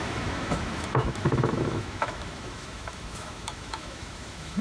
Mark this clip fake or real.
fake